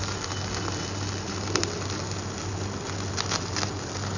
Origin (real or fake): real